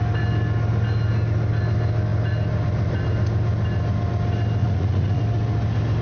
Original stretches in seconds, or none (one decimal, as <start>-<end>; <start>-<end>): 0.0-4.6; 5.2-6.0